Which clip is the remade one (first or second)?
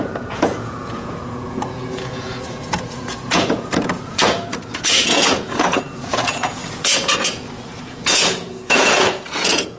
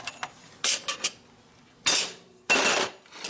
first